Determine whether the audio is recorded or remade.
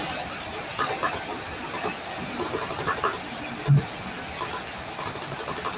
recorded